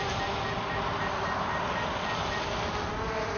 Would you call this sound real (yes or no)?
yes